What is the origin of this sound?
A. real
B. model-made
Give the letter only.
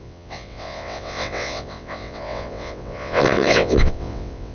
B